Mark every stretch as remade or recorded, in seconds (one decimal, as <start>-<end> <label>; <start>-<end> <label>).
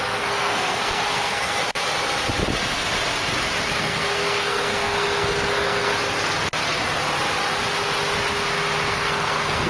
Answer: 0.0-1.6 remade; 1.6-3.8 recorded; 3.8-5.9 remade; 5.9-8.9 recorded; 8.9-9.7 remade